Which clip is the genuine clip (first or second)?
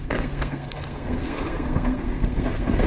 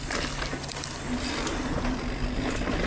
second